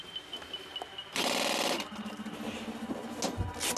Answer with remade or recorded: recorded